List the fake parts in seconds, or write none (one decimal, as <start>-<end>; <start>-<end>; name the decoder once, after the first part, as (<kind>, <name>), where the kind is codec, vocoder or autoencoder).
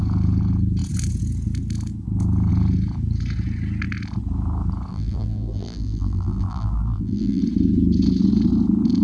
4.9-7.4 (vocoder, BigVGAN v2)